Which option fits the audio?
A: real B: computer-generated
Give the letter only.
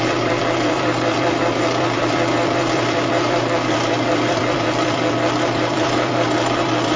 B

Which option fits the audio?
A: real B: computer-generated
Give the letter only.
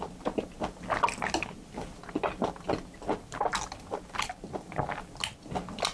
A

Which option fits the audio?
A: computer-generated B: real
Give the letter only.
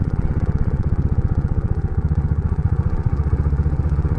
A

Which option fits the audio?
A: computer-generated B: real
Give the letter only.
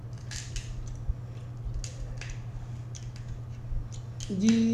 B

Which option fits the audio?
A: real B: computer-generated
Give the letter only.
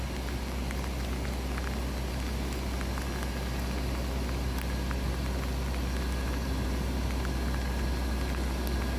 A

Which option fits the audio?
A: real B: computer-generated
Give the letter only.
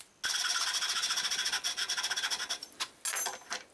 A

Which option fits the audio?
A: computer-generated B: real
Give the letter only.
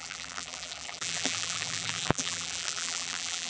A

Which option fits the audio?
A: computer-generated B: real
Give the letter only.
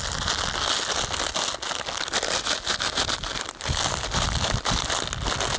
B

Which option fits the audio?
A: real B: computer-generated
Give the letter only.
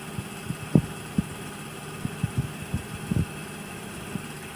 A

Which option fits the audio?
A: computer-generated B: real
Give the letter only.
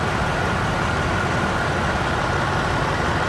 B